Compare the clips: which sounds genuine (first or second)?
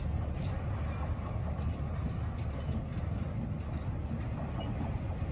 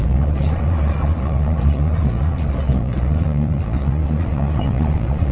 first